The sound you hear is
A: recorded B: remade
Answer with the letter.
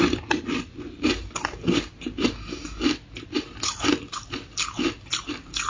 A